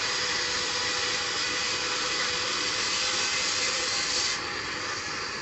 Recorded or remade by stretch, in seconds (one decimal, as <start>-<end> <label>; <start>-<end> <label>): 0.0-1.6 recorded; 1.6-4.8 remade; 4.8-5.4 recorded